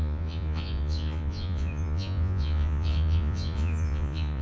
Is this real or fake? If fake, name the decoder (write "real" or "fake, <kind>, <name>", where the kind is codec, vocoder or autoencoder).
fake, vocoder, Vocos